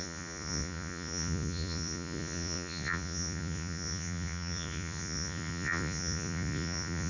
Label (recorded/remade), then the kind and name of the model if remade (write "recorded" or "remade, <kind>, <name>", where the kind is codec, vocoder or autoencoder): remade, vocoder, Vocos